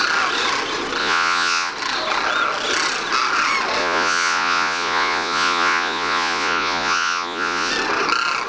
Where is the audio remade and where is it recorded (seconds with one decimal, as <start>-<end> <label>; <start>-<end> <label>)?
0.0-1.0 recorded; 1.0-1.7 remade; 1.7-3.8 recorded; 3.8-7.7 remade; 7.7-8.5 recorded